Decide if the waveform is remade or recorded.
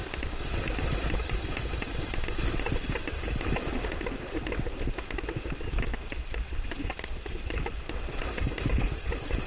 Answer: recorded